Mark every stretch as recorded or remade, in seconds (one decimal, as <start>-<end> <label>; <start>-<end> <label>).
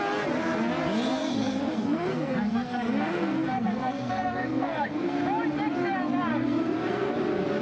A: 0.0-1.2 recorded; 1.2-5.2 remade; 5.2-6.3 recorded; 6.3-7.1 remade; 7.1-7.6 recorded